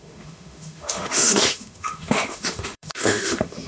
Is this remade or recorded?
remade